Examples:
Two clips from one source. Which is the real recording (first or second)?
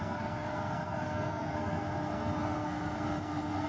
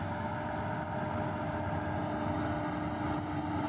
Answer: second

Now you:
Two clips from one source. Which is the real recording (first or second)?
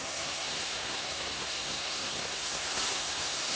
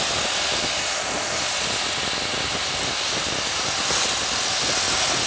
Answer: second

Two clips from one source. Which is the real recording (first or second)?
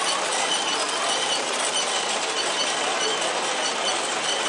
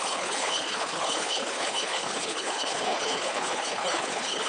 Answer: first